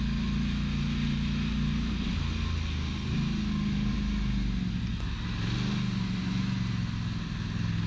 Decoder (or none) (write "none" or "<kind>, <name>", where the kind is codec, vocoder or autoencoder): none